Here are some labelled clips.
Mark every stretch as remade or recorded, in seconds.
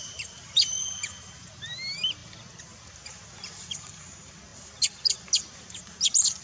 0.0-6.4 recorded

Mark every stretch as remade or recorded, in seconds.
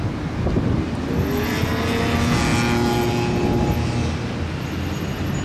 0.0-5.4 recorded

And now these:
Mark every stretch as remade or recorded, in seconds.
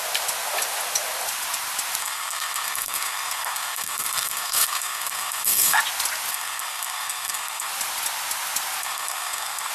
0.0-2.0 recorded; 2.0-5.8 remade; 5.8-6.3 recorded; 6.3-7.7 remade; 7.7-8.8 recorded; 8.8-9.7 remade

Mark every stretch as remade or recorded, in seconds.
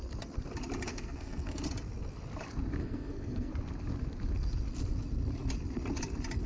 0.0-0.9 recorded; 0.9-1.6 remade; 1.6-2.8 recorded; 2.8-3.5 remade; 3.5-6.5 recorded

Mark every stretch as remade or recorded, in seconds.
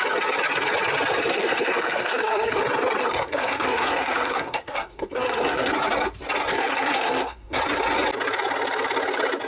0.0-1.3 recorded; 1.3-2.6 remade; 2.6-3.0 recorded; 3.0-5.7 remade; 5.7-6.5 recorded; 6.5-7.6 remade; 7.6-9.5 recorded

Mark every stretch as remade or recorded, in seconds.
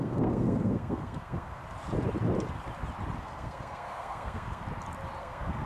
0.0-1.6 remade; 1.6-3.2 recorded; 3.2-4.6 remade; 4.6-5.2 recorded; 5.2-5.7 remade